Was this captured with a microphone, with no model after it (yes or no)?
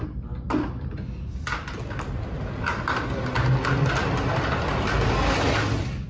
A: yes